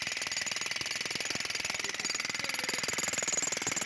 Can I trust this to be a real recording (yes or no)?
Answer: yes